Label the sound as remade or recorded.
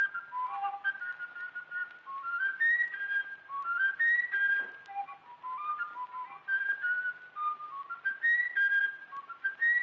recorded